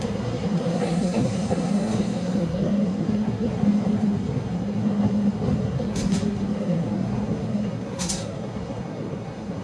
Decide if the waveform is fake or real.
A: fake